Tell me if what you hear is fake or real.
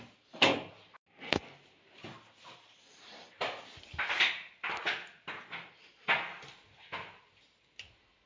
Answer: real